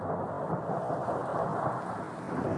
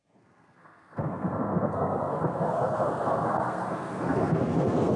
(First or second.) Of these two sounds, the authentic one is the first